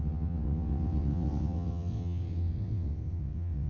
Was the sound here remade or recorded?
remade